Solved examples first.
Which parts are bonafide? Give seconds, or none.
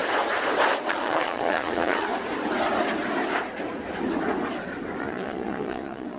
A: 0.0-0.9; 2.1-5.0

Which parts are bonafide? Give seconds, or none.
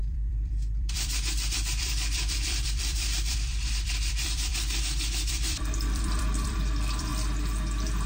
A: 4.5-5.3; 7.1-8.1